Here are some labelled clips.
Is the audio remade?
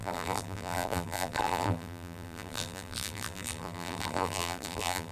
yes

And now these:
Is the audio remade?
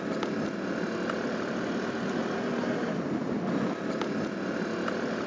no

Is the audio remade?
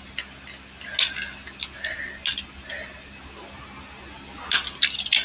no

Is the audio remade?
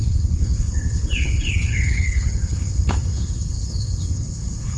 yes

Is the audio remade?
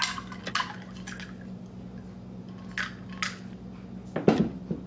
no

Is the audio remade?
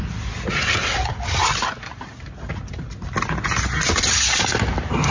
no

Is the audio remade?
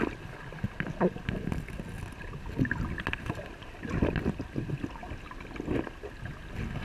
no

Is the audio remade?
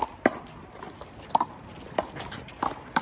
no